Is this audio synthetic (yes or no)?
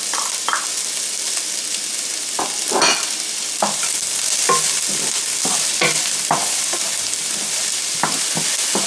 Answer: no